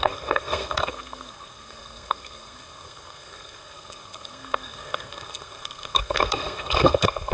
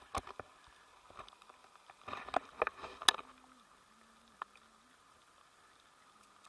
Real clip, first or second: second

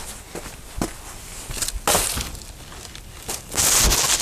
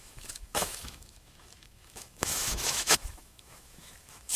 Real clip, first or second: first